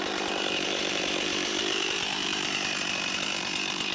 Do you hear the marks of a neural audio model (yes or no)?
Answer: yes